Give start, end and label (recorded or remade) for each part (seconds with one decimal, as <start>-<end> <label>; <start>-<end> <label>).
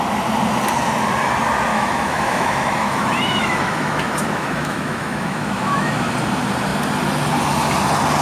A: 0.0-1.7 recorded; 1.7-6.1 remade; 6.1-8.2 recorded